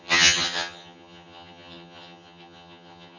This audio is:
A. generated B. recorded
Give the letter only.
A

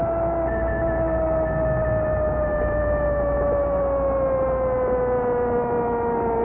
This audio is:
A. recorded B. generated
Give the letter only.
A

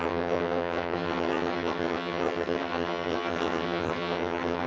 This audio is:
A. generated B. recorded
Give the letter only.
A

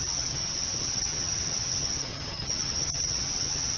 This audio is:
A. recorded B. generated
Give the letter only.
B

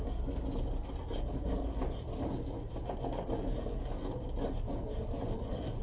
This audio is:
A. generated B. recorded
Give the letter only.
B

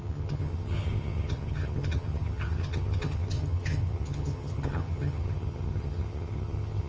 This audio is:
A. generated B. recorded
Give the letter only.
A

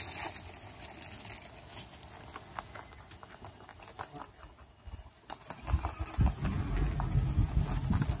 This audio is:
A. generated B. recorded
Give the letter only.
B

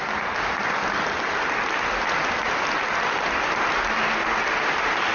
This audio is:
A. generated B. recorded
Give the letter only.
B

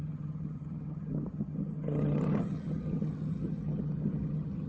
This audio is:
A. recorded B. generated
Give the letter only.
B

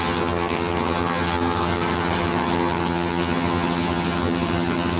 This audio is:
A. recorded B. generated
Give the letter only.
B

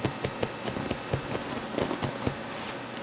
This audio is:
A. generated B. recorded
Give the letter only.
B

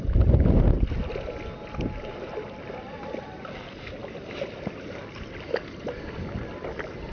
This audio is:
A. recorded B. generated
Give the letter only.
A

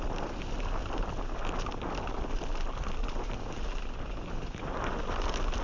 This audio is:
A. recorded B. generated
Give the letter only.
A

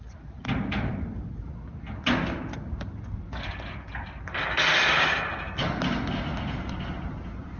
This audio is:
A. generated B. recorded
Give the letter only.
B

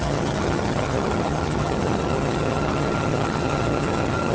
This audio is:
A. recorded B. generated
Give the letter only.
B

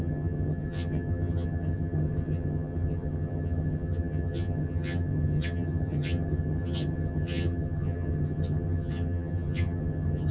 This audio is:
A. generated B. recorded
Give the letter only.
A